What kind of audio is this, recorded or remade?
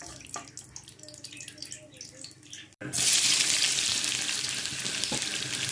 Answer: recorded